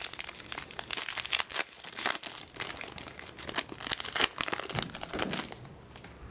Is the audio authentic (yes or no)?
yes